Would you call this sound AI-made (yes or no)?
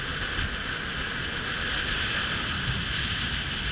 no